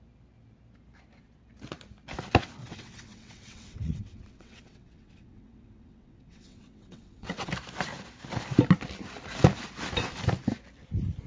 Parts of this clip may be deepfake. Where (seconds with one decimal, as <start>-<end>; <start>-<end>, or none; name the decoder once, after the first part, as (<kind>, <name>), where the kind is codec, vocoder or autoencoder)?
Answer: 2.6-7.5 (vocoder, WaveNeXt)